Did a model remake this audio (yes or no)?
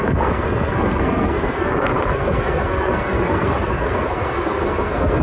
yes